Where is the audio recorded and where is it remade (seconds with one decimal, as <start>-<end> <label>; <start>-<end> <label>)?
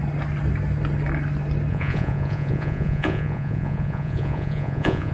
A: 0.0-1.7 recorded; 1.7-5.1 remade